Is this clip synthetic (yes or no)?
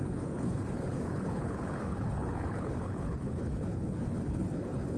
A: yes